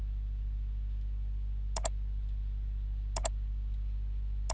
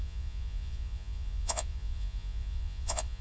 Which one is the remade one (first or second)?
second